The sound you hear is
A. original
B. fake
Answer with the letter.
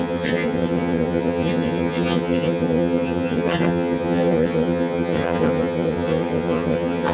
B